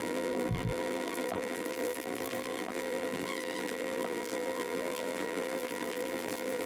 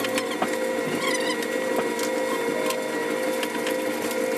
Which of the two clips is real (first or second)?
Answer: second